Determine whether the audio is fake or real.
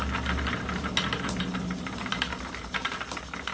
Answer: real